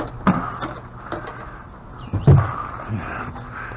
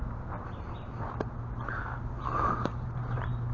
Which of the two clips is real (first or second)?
first